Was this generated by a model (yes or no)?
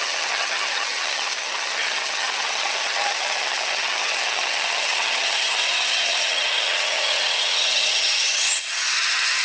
yes